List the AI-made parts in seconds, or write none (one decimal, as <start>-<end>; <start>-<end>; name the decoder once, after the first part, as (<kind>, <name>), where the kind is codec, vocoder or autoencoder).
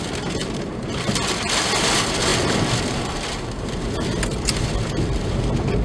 none